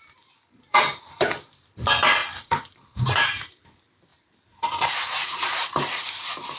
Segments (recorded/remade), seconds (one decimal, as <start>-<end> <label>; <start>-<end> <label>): 0.0-6.6 remade